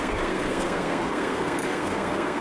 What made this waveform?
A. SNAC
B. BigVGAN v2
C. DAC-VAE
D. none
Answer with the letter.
A